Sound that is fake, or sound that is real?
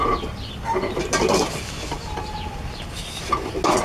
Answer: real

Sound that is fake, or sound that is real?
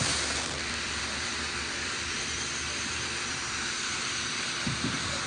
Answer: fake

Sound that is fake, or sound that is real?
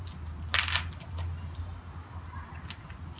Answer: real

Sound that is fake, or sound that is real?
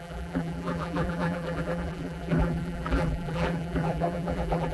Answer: fake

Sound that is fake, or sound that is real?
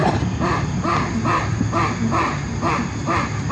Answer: real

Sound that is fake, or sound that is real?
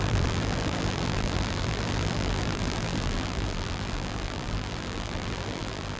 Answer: fake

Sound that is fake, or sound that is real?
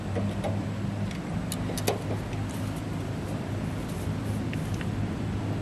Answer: real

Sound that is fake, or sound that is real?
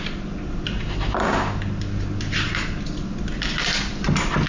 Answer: real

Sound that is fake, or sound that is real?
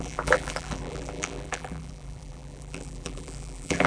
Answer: fake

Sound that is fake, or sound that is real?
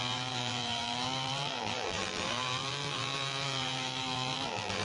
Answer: fake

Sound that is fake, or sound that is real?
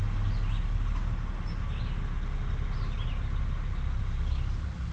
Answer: real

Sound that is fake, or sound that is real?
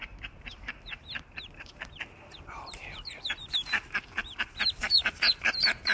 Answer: fake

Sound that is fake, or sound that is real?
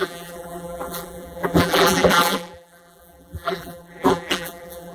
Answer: fake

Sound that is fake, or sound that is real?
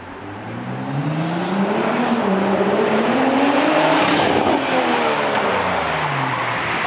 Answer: fake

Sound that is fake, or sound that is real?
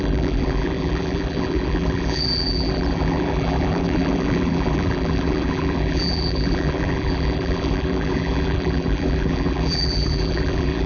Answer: fake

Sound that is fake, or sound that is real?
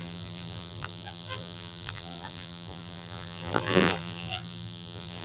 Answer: fake